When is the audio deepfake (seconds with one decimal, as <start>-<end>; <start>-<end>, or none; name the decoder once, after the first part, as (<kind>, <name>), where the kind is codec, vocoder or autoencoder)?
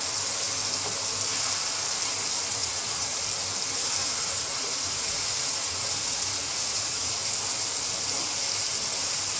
2.6-3.2 (vocoder, Vocos); 4.0-7.2